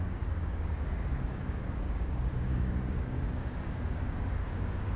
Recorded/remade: remade